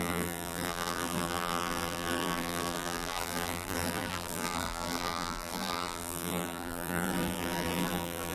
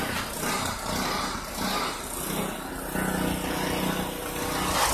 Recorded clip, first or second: second